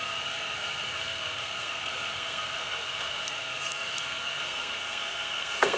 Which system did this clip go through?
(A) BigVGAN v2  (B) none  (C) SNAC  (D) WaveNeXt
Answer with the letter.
C